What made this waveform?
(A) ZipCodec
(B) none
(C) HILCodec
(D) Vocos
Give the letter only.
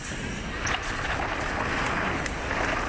B